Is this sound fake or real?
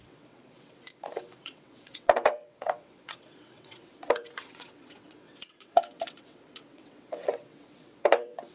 fake